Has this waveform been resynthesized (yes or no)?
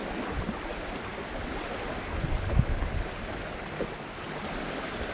no